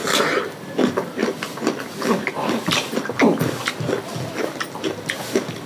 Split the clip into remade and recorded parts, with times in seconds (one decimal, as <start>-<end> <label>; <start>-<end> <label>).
0.0-5.7 recorded